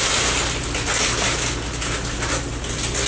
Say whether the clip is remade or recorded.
recorded